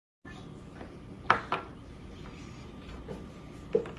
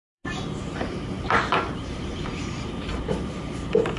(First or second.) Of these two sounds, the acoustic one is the first